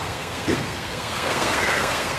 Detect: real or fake fake